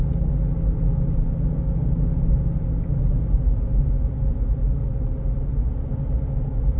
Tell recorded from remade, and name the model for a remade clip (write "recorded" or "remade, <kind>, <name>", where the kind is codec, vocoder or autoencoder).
recorded